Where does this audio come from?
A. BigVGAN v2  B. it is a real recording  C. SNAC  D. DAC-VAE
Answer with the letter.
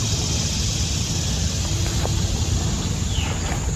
B